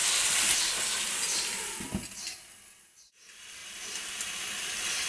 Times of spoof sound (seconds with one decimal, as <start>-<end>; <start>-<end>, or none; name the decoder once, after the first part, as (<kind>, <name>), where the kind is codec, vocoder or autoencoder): none